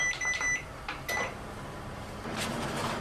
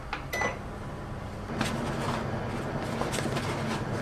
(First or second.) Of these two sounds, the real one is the second